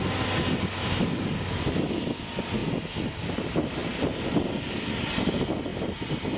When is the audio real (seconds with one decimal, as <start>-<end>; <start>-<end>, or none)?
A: 0.0-6.4